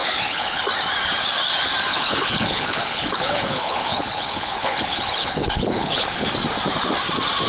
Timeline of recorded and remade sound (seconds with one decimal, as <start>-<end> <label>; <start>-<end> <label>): 0.0-0.6 remade; 0.6-1.9 recorded; 1.9-6.3 remade; 6.3-7.5 recorded